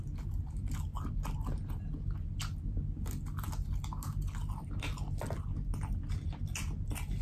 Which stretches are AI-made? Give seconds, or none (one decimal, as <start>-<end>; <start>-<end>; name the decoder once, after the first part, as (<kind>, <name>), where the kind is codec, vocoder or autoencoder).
none